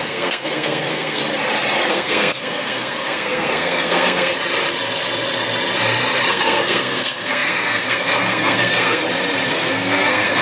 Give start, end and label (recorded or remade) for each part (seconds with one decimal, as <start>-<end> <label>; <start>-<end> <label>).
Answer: 0.0-1.2 remade; 1.2-1.9 recorded; 1.9-4.3 remade; 4.3-6.3 recorded; 6.3-9.0 remade; 9.0-9.5 recorded; 9.5-10.4 remade

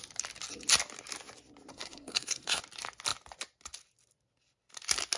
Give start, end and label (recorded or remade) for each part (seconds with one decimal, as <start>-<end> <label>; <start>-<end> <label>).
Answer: 0.0-1.7 recorded; 1.7-2.6 remade; 2.6-5.2 recorded

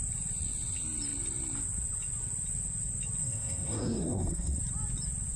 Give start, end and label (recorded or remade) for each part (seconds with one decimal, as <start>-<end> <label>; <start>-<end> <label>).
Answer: 0.0-3.2 recorded; 3.2-4.6 remade; 4.6-5.4 recorded

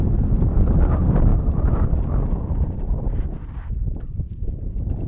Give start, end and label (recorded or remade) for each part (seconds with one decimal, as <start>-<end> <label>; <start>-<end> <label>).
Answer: 0.0-5.1 recorded

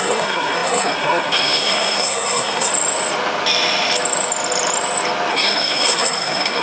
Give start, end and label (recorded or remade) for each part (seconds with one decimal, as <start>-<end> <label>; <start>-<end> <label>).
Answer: 0.0-2.7 remade; 2.7-5.3 recorded; 5.3-6.6 remade